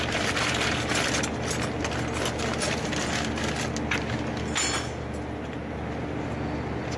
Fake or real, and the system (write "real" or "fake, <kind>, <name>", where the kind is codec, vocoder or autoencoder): real